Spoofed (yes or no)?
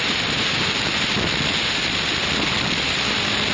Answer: no